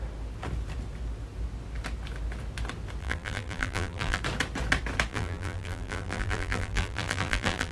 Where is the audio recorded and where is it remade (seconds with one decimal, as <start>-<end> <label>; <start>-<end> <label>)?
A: 0.0-3.0 recorded; 3.0-4.2 remade; 4.2-5.1 recorded; 5.1-7.7 remade